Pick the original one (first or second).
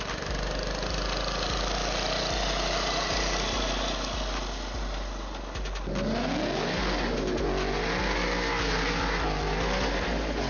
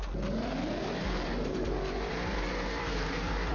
first